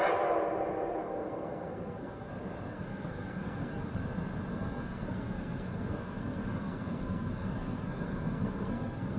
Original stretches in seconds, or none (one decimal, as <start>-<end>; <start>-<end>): 0.0-1.0; 2.3-2.7; 4.0-4.5